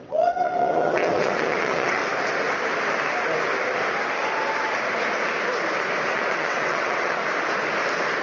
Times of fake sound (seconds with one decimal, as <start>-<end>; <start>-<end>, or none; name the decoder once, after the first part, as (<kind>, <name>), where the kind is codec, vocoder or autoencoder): 0.0-2.0 (vocoder, WaveNeXt); 6.1-7.2